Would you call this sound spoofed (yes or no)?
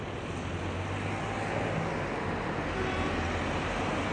no